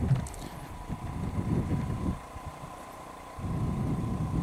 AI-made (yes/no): yes